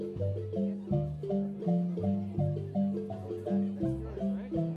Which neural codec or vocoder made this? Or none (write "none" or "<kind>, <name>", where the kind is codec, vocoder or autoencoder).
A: none